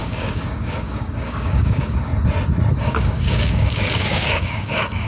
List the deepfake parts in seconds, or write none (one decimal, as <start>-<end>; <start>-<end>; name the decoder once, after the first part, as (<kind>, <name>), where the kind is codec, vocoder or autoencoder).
0.0-2.1 (codec, DAC); 2.8-5.1